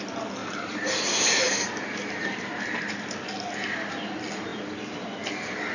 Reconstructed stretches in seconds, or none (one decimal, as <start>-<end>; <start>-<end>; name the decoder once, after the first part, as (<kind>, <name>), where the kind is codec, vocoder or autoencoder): 0.4-2.5 (vocoder, BigVGAN v2)